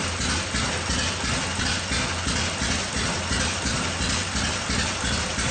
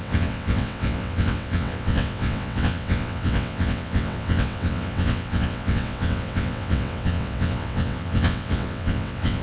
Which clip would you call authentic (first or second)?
first